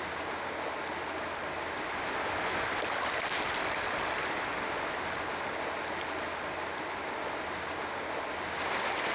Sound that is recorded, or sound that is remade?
recorded